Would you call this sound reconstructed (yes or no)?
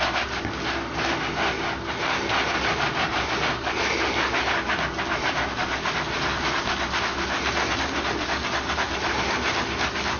no